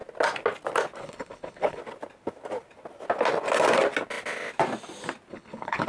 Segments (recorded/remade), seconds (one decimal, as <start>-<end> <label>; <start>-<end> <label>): 0.0-1.0 recorded; 1.0-1.8 remade; 1.8-5.3 recorded; 5.3-5.9 remade

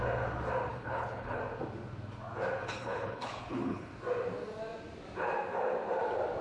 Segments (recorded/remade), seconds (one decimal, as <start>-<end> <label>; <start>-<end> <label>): 0.0-0.7 recorded; 0.7-1.4 remade; 1.4-2.6 recorded; 2.6-3.9 remade; 3.9-6.4 recorded

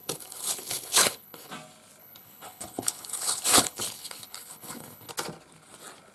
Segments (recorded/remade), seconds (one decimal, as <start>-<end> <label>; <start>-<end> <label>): 0.0-1.5 remade; 1.5-2.0 recorded; 2.0-5.1 remade; 5.1-6.1 recorded

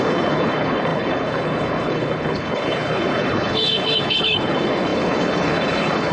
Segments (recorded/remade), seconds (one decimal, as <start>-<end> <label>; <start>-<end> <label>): 0.0-6.1 remade

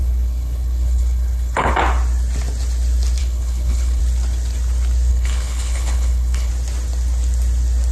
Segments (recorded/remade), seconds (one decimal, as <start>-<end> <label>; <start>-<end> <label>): 0.0-1.7 remade; 1.7-3.2 recorded; 3.2-4.0 remade; 4.0-5.1 recorded; 5.1-6.5 remade; 6.5-7.9 recorded